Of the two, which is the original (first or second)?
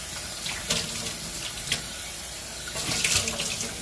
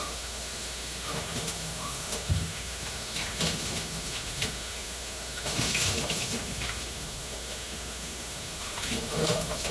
first